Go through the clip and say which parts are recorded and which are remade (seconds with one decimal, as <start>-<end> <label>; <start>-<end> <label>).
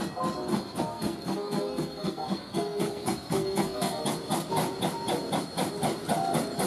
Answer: 0.0-0.5 recorded; 0.5-4.0 remade; 4.0-6.7 recorded